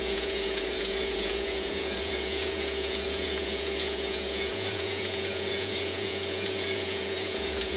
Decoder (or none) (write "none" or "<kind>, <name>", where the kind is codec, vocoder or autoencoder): vocoder, Vocos